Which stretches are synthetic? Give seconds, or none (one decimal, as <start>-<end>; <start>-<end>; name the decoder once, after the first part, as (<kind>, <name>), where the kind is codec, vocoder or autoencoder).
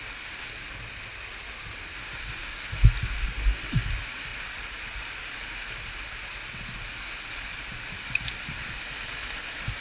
1.9-2.7 (codec, DAC)